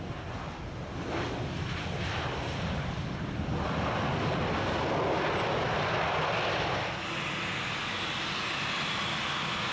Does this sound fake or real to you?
real